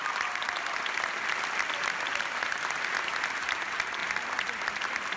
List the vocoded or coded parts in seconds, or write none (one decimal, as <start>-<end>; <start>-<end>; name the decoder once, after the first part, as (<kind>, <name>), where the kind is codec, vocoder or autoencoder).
none